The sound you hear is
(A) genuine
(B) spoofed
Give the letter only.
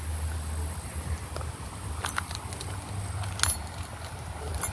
A